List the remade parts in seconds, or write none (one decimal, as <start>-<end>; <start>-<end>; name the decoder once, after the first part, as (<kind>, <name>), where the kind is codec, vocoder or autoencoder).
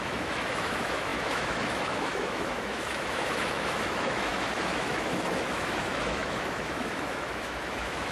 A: 0.0-8.1 (autoencoder, DAC-VAE)